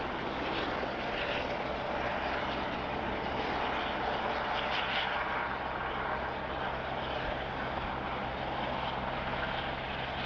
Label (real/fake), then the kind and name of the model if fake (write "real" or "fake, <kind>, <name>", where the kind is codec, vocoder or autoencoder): real